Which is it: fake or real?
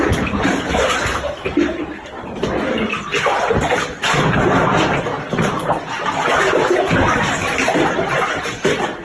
real